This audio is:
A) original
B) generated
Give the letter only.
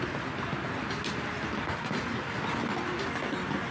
A